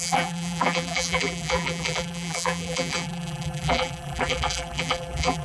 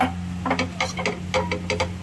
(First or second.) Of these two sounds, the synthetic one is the first